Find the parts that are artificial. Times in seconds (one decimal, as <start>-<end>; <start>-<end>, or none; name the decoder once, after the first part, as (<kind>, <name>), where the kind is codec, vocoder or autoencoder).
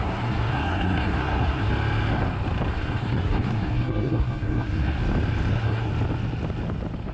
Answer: 0.0-1.7 (codec, SNAC); 2.7-5.0; 5.5-5.9